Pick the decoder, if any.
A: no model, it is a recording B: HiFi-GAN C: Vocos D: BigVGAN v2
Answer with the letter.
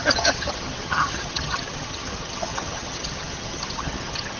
B